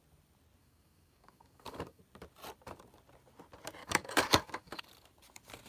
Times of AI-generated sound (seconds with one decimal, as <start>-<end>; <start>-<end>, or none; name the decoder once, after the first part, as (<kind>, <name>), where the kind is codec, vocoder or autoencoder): 0.6-2.0 (codec, DAC); 3.8-4.8